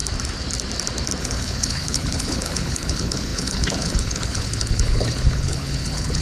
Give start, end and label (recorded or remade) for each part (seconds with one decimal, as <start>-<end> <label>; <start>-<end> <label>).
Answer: 0.0-1.2 recorded; 1.2-6.2 remade